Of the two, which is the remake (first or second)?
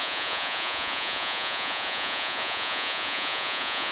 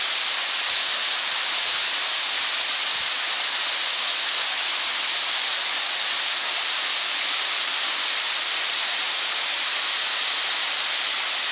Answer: first